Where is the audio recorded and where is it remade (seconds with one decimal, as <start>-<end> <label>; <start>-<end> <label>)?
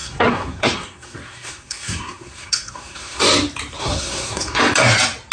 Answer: 0.0-3.2 remade; 3.2-3.8 recorded; 3.8-4.6 remade; 4.6-5.3 recorded